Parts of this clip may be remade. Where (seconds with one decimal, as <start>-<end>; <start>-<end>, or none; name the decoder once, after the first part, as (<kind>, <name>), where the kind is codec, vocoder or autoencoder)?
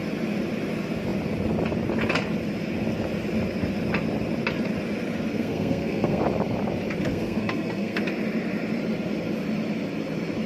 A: 5.3-6.2 (codec, SNAC); 7.1-8.0